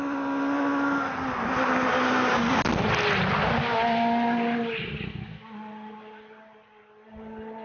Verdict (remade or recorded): recorded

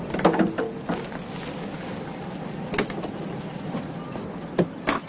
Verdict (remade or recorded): recorded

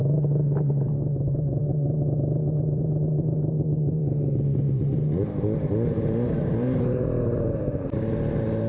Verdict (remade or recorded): remade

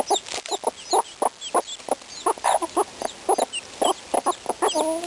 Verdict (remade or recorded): recorded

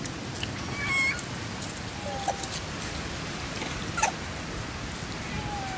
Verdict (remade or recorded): recorded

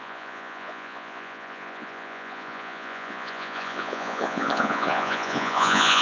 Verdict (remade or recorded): remade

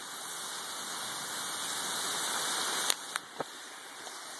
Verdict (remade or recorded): recorded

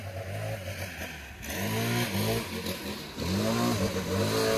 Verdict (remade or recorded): recorded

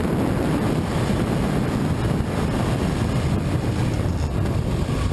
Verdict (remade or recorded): recorded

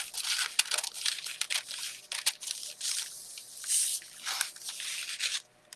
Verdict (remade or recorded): recorded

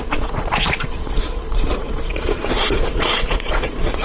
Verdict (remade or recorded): remade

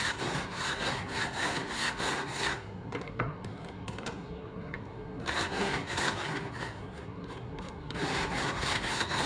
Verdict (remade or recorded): remade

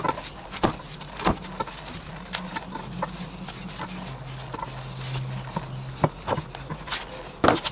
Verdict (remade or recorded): recorded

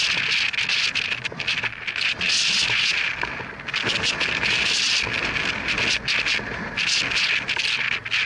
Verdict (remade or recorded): recorded